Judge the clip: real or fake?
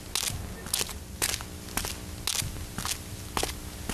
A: real